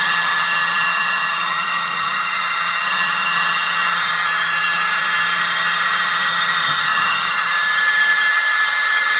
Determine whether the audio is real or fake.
fake